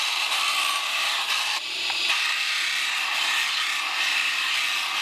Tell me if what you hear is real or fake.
real